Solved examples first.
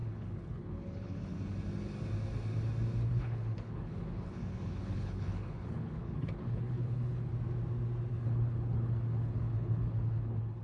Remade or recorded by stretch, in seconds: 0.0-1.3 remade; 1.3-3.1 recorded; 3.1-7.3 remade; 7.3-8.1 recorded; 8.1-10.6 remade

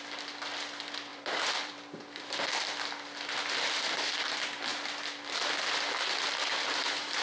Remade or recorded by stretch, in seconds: 0.0-1.1 recorded; 1.1-1.7 remade; 1.7-7.2 recorded

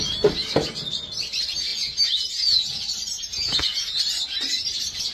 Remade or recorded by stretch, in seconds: 0.0-1.7 recorded; 1.7-2.8 remade; 2.8-3.3 recorded; 3.3-4.0 remade; 4.0-5.1 recorded

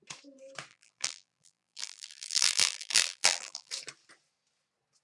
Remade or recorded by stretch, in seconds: 0.0-0.7 recorded; 0.7-3.7 remade; 3.7-5.0 recorded

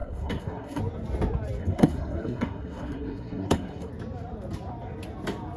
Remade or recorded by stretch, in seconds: 0.0-0.8 remade; 0.8-1.6 recorded; 1.6-3.9 remade; 3.9-5.6 recorded

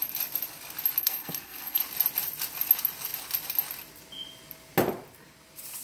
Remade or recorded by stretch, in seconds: 0.0-1.0 recorded; 1.0-1.8 remade; 1.8-5.8 recorded

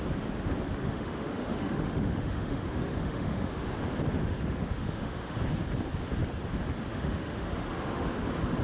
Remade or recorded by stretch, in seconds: 0.0-0.8 recorded; 0.8-3.7 remade; 3.7-4.2 recorded; 4.2-5.4 remade; 5.4-6.9 recorded; 6.9-8.1 remade; 8.1-8.6 recorded

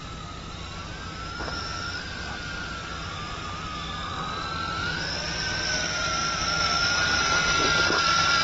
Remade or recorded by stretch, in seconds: 0.0-8.4 recorded